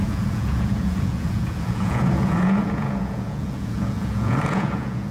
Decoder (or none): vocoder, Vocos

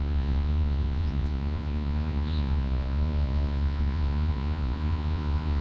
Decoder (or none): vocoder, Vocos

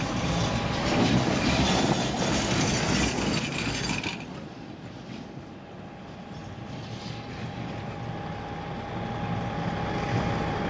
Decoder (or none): none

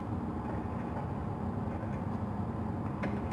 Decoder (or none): none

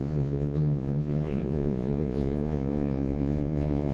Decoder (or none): vocoder, Vocos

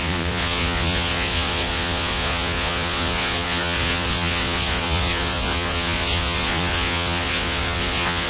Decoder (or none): vocoder, Vocos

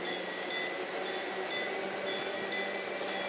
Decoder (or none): none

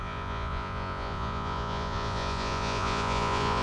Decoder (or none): vocoder, Vocos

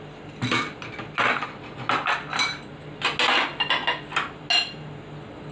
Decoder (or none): none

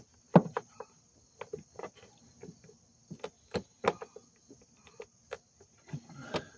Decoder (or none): none